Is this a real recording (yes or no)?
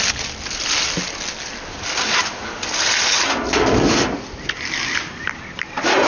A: yes